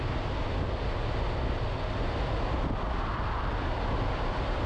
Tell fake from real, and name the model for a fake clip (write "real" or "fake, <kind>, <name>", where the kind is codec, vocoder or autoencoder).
real